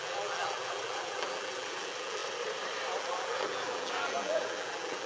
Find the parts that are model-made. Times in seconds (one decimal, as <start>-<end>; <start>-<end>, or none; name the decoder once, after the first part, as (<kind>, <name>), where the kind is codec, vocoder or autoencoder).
0.0-2.2 (vocoder, BigVGAN v2); 3.0-5.1